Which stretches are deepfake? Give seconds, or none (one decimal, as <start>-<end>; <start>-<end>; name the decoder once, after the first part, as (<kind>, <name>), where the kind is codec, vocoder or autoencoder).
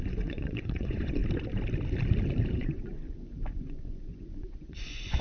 0.0-1.2 (vocoder, Vocos); 2.5-5.2